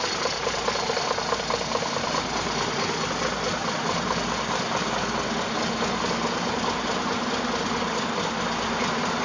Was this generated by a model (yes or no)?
no